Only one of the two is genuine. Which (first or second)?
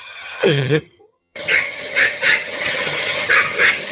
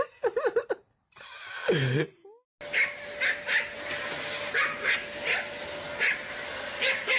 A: second